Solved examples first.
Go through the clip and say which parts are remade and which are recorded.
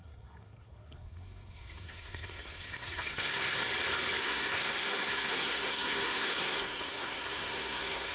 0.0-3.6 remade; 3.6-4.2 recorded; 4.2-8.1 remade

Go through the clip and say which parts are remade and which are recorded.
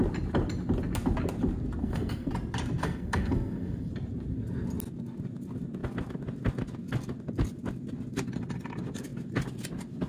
0.0-1.8 recorded; 1.8-2.3 remade; 2.3-2.8 recorded; 2.8-3.9 remade; 3.9-10.1 recorded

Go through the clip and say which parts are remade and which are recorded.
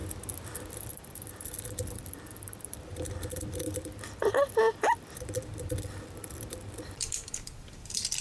0.0-0.9 recorded; 0.9-8.2 remade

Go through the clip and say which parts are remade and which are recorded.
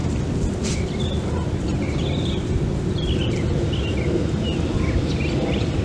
0.0-5.8 recorded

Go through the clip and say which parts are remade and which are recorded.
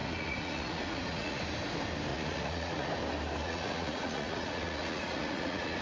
0.0-1.4 remade; 1.4-2.1 recorded; 2.1-2.9 remade; 2.9-3.4 recorded; 3.4-5.8 remade